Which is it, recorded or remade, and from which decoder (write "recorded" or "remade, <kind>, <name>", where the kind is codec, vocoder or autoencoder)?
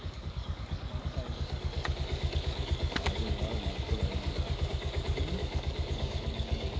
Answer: remade, codec, DAC